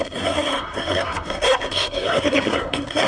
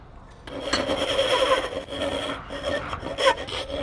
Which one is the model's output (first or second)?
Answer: first